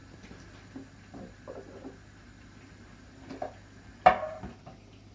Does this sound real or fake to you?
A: real